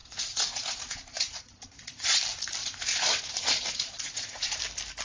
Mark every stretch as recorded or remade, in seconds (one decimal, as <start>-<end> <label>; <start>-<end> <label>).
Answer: 0.0-2.2 remade; 2.2-2.6 recorded; 2.6-4.6 remade; 4.6-5.0 recorded